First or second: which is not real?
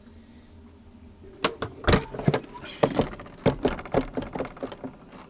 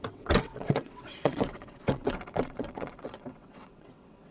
second